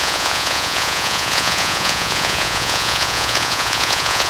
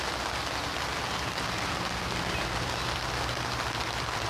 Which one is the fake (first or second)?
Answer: first